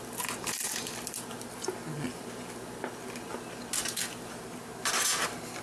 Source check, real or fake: real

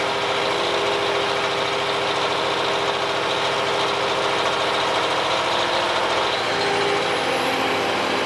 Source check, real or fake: real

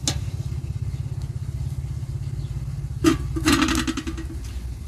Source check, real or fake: real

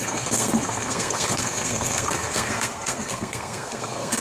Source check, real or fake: fake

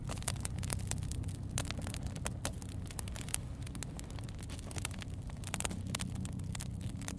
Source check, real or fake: real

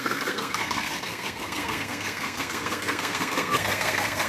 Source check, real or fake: fake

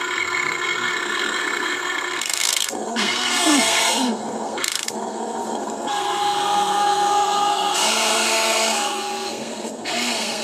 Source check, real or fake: fake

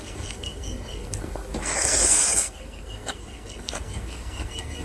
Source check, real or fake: fake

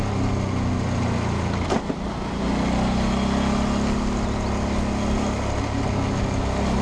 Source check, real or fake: real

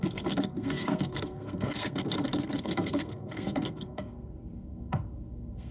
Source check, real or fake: fake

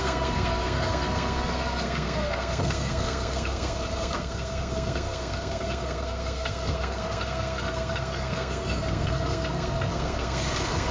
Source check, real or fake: fake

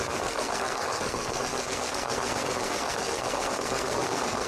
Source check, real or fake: fake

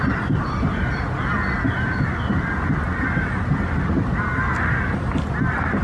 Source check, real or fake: real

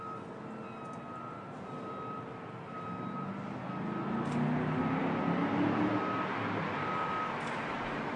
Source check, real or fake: real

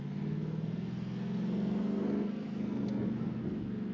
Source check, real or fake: fake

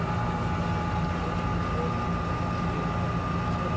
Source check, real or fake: real